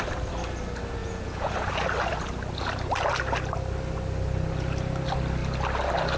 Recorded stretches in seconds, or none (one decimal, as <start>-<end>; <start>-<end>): 0.0-1.0; 1.7-6.2